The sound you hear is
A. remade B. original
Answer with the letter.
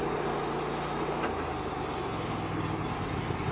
B